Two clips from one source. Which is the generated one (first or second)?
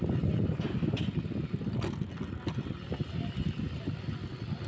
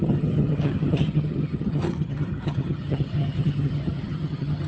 second